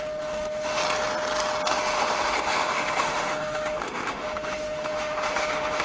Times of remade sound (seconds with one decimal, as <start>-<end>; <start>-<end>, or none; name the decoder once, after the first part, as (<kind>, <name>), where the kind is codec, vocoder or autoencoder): 0.0-0.8 (autoencoder, DAC-VAE); 1.7-5.8